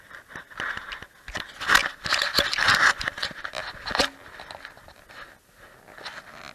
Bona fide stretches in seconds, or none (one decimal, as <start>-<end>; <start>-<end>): 0.0-1.8; 3.4-6.5